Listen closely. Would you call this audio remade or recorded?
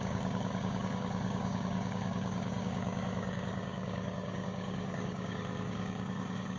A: remade